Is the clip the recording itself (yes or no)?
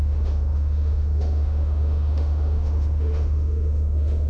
no